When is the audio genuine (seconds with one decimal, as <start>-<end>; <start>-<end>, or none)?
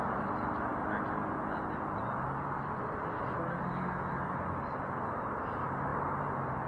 0.0-6.7